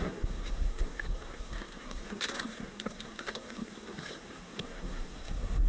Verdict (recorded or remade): remade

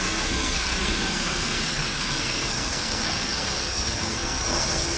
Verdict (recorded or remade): remade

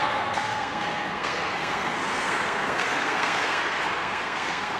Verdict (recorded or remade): remade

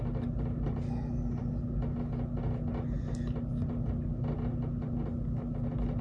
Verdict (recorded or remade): recorded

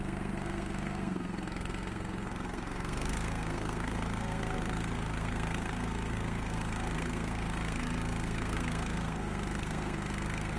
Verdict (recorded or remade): remade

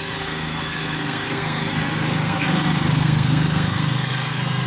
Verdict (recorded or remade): remade